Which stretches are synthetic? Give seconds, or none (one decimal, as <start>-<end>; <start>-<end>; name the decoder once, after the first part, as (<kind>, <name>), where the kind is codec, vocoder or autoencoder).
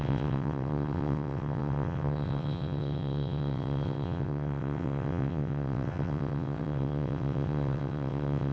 0.0-8.5 (vocoder, WaveNeXt)